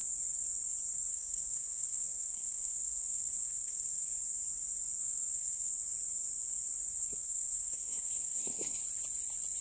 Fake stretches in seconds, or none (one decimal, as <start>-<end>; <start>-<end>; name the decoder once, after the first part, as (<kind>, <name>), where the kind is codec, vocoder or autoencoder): 1.1-4.1 (codec, SNAC); 5.0-5.7; 7.0-8.8